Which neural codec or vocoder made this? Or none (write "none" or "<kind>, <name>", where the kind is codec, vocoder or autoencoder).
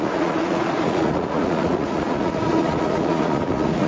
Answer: vocoder, Vocos